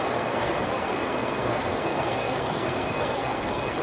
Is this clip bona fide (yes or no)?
no